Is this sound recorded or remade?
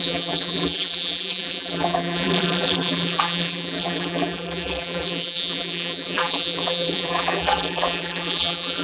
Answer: remade